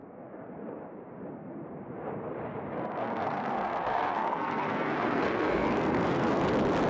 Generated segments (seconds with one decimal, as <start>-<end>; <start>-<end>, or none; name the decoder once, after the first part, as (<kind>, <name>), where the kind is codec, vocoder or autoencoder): 2.8-6.4 (codec, SNAC)